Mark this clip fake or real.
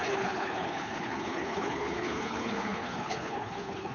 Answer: fake